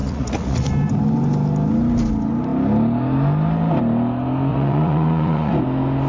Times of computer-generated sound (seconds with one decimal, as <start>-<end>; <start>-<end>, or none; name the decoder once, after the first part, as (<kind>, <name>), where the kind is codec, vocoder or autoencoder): 0.0-0.7 (vocoder, Vocos); 4.5-5.5